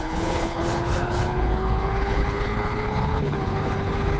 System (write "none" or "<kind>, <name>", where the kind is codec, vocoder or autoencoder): codec, HILCodec